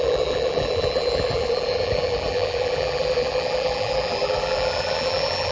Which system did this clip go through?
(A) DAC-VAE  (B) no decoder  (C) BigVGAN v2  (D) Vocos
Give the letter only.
C